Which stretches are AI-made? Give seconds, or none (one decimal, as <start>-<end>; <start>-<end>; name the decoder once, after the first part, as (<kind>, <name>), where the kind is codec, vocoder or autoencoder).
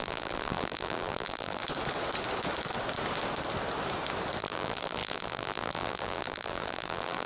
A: 0.0-1.6 (vocoder, BigVGAN v2); 4.4-7.3